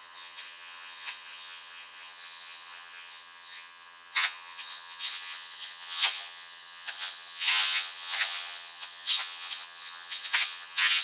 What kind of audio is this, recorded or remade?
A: remade